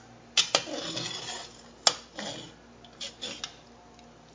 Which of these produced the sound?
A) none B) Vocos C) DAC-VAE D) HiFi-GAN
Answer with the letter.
A